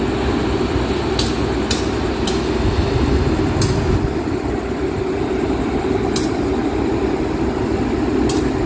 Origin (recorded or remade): recorded